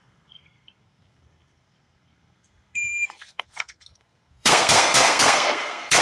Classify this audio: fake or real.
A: fake